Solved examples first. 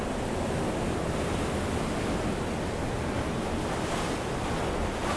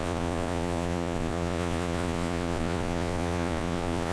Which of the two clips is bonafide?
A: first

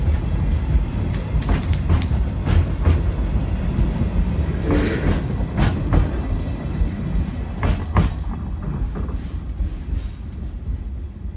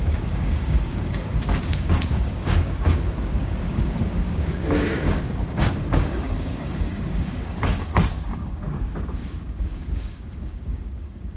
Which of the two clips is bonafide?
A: first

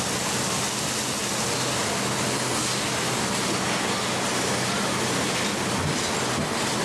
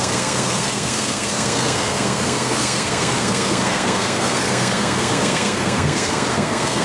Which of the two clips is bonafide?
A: first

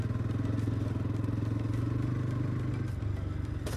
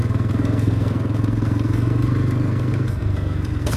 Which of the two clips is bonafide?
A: first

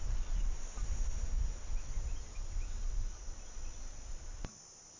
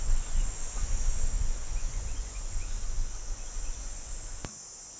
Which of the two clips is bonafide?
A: first